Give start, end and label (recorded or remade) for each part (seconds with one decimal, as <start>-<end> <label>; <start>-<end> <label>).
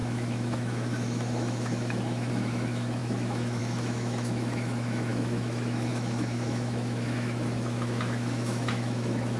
0.0-9.4 remade